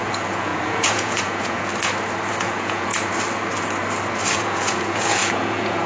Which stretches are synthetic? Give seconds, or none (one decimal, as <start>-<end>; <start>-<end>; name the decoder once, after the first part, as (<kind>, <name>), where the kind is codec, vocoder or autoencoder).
0.0-1.7 (vocoder, Vocos); 2.3-2.9; 4.3-5.9